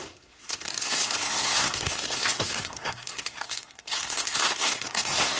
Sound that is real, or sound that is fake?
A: fake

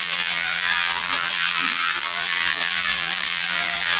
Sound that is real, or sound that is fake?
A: fake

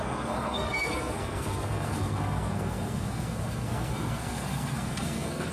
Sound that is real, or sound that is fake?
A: fake